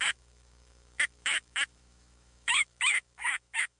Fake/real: fake